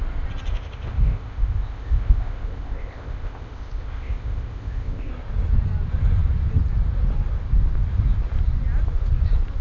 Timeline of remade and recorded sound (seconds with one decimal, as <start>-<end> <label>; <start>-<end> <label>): 0.0-0.5 recorded; 0.5-5.1 remade; 5.1-9.6 recorded